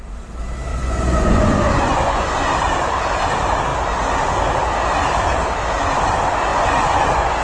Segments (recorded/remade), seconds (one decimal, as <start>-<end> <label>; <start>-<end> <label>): 0.0-0.7 recorded; 0.7-2.5 remade; 2.5-6.5 recorded; 6.5-7.4 remade